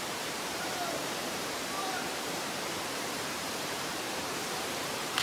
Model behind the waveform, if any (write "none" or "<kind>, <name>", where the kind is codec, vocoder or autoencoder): vocoder, BigVGAN v2